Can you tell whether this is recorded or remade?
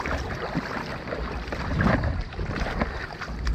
remade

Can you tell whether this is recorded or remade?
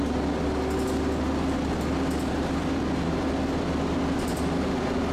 recorded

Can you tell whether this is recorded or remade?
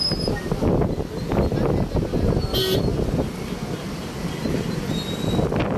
recorded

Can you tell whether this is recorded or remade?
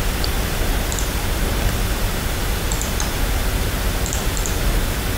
remade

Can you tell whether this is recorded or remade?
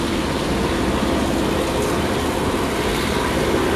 recorded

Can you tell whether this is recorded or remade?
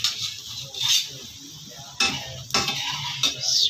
recorded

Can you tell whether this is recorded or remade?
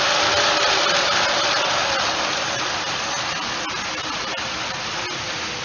recorded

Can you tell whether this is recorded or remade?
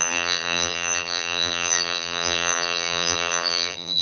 remade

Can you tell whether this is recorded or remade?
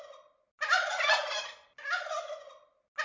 recorded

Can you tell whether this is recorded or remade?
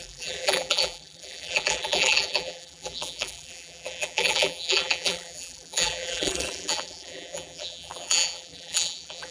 remade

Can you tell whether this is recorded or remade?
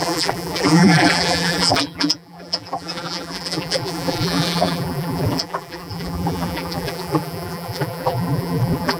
remade